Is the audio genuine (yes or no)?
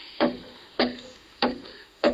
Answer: no